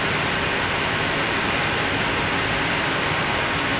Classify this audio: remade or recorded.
recorded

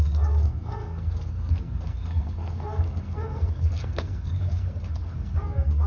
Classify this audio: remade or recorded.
remade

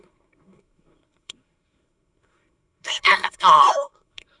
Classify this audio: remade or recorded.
remade